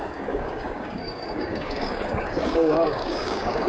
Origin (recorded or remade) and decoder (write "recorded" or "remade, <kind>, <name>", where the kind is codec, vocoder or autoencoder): remade, codec, DAC